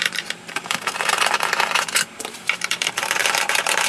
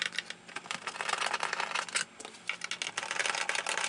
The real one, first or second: second